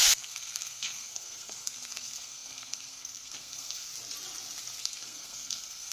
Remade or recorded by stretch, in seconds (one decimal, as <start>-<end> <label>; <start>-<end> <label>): 0.0-3.9 remade; 3.9-4.8 recorded; 4.8-5.9 remade